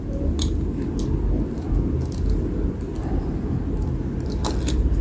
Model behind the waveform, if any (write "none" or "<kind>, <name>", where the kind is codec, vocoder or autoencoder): none